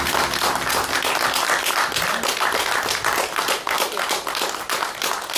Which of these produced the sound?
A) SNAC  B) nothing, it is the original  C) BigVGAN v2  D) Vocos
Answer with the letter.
B